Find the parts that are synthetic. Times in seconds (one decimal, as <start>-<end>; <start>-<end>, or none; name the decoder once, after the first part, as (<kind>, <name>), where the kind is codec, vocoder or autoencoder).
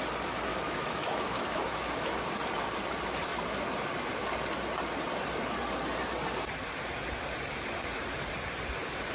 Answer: 0.5-2.2 (autoencoder, DAC-VAE)